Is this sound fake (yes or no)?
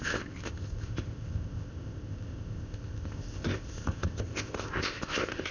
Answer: yes